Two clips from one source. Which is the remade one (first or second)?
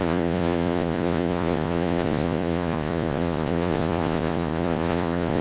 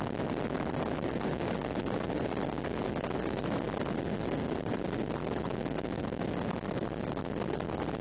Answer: first